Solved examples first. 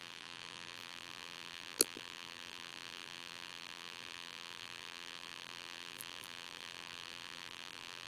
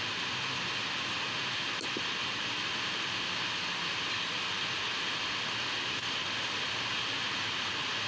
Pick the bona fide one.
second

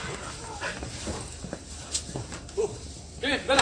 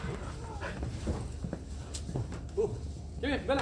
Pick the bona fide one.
second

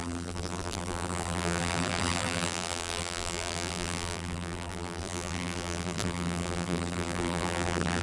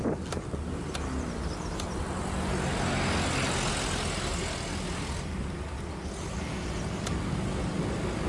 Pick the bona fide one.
second